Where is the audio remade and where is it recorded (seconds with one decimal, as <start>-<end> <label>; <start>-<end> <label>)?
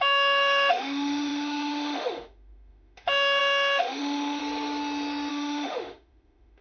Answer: 0.0-4.4 remade; 4.4-5.3 recorded; 5.3-6.6 remade